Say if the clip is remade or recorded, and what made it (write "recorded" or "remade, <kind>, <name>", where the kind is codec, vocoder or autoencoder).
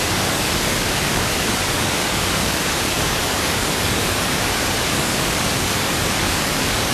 remade, codec, DAC